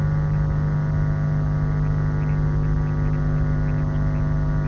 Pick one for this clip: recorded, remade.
recorded